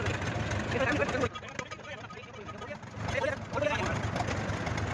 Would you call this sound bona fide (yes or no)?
yes